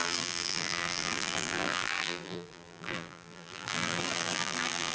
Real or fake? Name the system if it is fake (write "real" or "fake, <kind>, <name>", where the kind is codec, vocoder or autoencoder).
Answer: fake, vocoder, BigVGAN v2